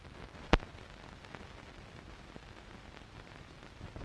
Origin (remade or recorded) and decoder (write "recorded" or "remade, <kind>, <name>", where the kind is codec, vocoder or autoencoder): remade, vocoder, BigVGAN v2